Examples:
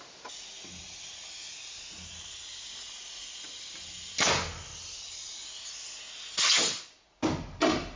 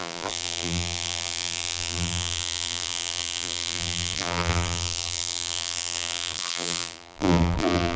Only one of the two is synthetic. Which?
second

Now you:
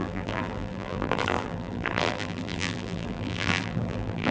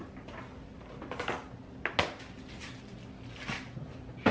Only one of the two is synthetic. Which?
first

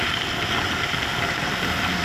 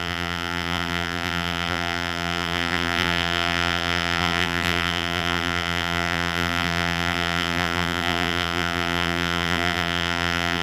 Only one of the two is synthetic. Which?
second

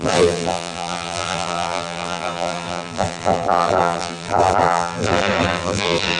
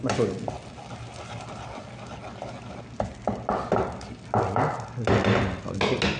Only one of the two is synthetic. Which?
first